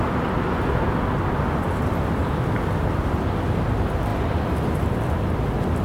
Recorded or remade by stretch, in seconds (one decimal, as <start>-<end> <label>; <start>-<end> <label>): 0.0-5.8 recorded